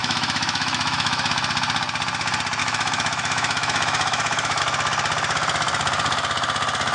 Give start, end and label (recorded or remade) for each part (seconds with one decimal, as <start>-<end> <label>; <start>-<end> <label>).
0.0-1.3 remade; 1.3-2.6 recorded; 2.6-4.6 remade; 4.6-6.9 recorded